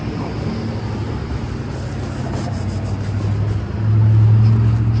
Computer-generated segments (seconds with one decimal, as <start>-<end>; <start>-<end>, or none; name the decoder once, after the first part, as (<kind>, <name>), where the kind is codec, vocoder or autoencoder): none